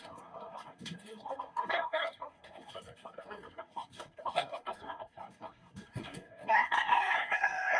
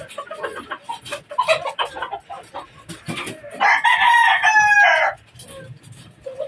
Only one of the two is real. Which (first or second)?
second